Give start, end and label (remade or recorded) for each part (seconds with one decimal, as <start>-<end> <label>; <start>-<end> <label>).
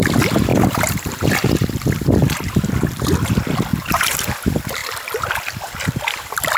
0.0-0.5 recorded; 0.5-1.1 remade; 1.1-3.7 recorded; 3.7-4.2 remade; 4.2-6.6 recorded